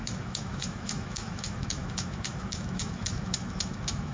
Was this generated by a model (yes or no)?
yes